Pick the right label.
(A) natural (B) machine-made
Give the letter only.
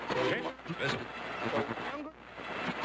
A